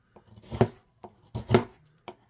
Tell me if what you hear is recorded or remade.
recorded